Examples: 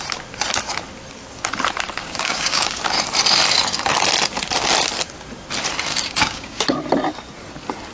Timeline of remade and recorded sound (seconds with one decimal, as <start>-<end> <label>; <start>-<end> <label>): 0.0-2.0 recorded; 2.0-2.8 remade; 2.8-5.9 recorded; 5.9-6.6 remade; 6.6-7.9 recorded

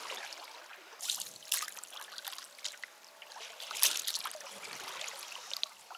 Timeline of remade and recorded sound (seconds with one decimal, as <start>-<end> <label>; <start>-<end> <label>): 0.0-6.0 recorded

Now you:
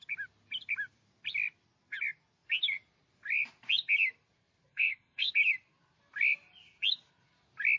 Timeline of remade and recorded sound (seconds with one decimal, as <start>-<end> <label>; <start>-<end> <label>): 0.0-4.7 recorded; 4.7-5.3 remade; 5.3-7.8 recorded

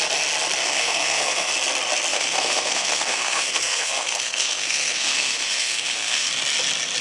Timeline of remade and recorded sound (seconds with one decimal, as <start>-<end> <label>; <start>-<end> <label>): 0.0-0.6 recorded; 0.6-1.5 remade; 1.5-2.1 recorded; 2.1-6.3 remade; 6.3-7.0 recorded